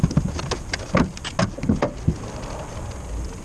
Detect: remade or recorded recorded